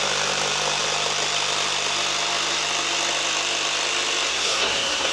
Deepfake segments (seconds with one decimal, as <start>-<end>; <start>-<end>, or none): 4.3-5.1

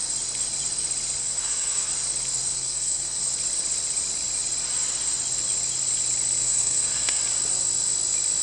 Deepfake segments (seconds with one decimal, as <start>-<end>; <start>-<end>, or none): 1.2-1.9; 2.5-3.2; 6.4-7.2

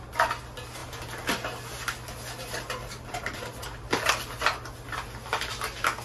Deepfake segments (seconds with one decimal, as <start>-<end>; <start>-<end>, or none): none

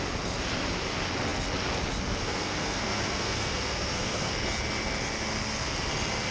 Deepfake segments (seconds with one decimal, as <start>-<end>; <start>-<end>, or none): 2.2-4.3

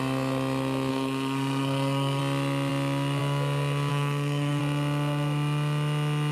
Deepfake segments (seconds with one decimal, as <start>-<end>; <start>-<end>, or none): 0.9-2.2; 3.9-4.6

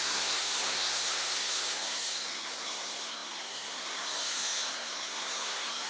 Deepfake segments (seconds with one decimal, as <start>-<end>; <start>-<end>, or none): 0.0-5.9

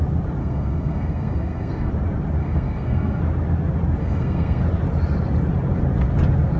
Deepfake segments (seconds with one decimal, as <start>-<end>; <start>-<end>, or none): 0.4-1.9; 2.4-3.2; 4.0-4.6

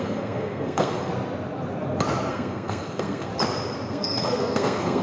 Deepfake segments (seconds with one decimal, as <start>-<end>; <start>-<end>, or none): 0.0-1.1; 2.3-3.3; 3.9-5.0